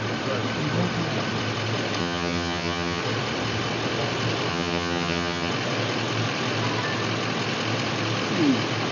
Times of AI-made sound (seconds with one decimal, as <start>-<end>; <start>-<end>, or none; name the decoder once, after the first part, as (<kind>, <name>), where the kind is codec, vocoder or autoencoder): 2.0-3.0 (vocoder, HiFi-GAN); 4.5-5.5